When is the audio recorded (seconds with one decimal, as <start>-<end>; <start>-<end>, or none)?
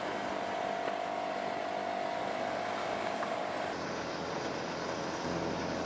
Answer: 0.0-2.8; 3.5-5.9